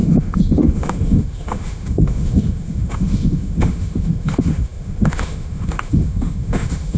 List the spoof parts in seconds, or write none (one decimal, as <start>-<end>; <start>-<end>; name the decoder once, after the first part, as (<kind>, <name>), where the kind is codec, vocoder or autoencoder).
0.0-7.0 (autoencoder, DAC-VAE)